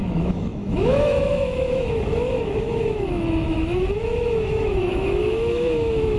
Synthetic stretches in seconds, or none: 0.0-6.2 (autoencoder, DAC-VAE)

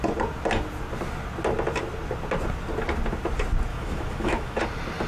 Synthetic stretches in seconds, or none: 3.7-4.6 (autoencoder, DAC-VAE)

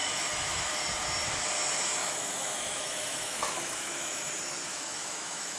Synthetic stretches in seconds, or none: 0.0-0.7 (autoencoder, DAC-VAE); 2.0-4.3; 4.7-5.6

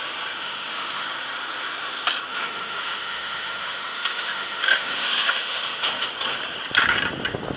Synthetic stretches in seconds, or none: 0.4-1.1 (autoencoder, DAC-VAE); 2.3-6.1

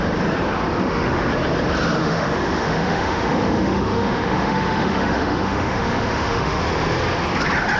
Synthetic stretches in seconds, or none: 0.8-1.3 (autoencoder, DAC-VAE); 2.0-6.6